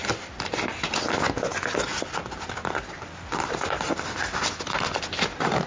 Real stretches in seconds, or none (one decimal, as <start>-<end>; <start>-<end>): 0.6-1.9; 5.3-5.7